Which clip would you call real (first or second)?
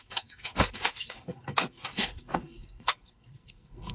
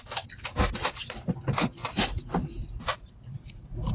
second